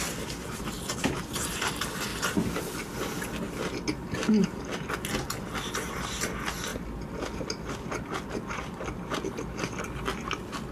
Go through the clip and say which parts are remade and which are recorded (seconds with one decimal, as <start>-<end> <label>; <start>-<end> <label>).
0.0-10.7 recorded